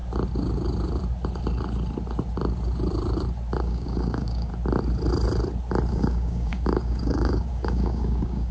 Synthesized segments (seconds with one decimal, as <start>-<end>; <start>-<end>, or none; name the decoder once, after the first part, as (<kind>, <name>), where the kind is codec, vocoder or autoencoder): 3.6-4.5 (codec, DAC); 5.9-8.5